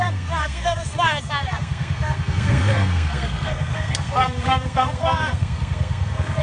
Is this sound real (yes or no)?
no